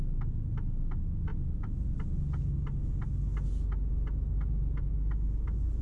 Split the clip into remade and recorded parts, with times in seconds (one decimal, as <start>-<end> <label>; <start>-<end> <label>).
0.0-5.8 recorded